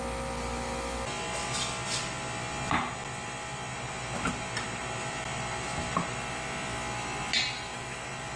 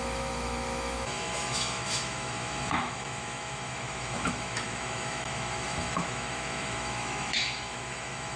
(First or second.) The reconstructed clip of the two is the second